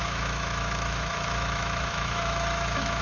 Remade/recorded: remade